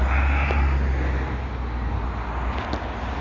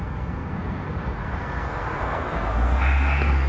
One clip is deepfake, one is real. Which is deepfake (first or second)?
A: second